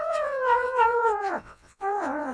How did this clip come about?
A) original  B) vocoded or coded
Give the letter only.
B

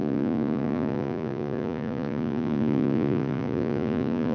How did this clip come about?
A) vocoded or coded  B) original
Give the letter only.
A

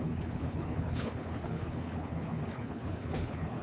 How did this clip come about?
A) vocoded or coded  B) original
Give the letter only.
A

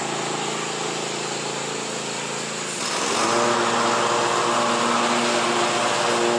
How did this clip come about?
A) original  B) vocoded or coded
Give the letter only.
A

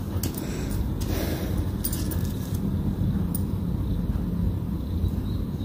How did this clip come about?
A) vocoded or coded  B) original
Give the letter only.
B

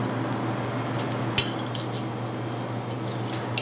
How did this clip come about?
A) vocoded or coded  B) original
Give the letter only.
B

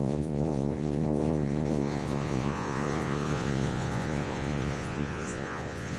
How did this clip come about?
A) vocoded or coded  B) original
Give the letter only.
A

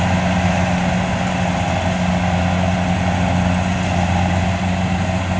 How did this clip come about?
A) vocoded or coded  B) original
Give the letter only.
B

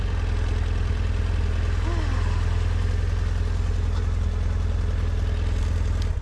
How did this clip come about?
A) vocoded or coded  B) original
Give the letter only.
B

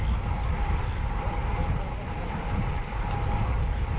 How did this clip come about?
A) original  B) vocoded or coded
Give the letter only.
A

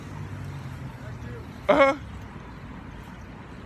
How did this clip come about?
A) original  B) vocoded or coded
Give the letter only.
A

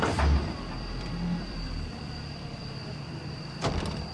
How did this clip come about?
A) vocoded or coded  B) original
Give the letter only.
A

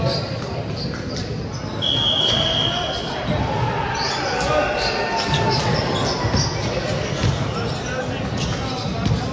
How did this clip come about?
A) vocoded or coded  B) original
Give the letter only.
B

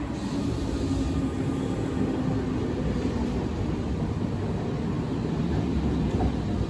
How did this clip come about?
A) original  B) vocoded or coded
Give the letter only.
A